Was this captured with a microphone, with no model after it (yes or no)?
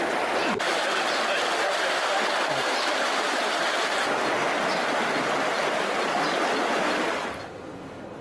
yes